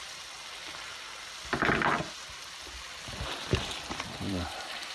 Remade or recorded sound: remade